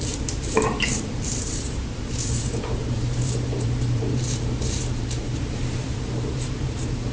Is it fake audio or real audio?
fake